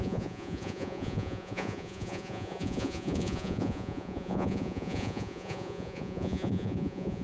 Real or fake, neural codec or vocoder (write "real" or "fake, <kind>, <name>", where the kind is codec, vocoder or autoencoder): fake, vocoder, Vocos